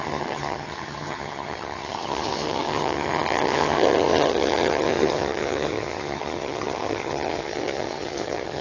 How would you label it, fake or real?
fake